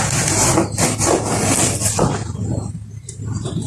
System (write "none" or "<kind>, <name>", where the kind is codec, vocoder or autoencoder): none